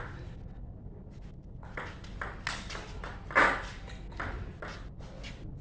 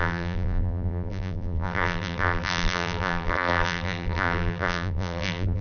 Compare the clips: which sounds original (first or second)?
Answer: first